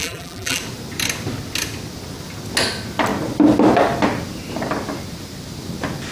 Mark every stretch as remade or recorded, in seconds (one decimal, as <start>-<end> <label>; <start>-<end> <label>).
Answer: 0.0-0.6 remade; 0.6-6.1 recorded